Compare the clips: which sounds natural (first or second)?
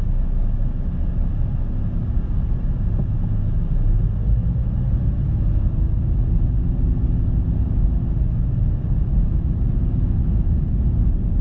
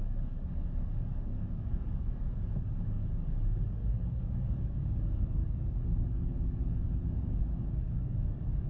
first